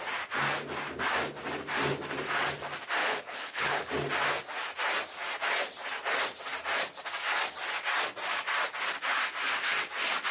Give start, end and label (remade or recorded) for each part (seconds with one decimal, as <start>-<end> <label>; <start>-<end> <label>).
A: 0.0-3.0 recorded; 3.0-3.9 remade; 3.9-10.3 recorded

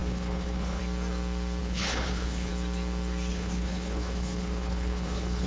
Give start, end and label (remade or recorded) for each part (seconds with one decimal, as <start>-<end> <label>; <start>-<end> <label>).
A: 0.0-0.8 remade; 0.8-1.6 recorded; 1.6-2.5 remade; 2.5-3.3 recorded; 3.3-5.5 remade

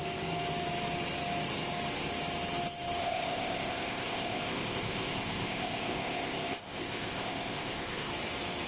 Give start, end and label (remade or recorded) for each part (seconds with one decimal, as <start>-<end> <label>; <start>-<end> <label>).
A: 0.0-3.0 recorded; 3.0-8.1 remade; 8.1-8.7 recorded

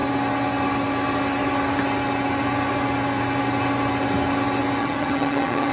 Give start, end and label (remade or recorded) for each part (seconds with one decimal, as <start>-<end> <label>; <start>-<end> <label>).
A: 0.0-4.8 recorded; 4.8-5.7 remade

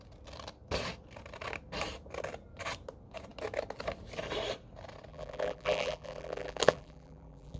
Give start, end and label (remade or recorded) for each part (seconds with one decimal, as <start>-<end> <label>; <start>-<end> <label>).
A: 0.0-5.1 recorded; 5.1-7.6 remade

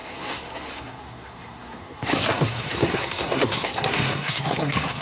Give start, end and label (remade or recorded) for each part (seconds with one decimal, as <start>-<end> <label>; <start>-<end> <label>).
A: 0.0-5.0 remade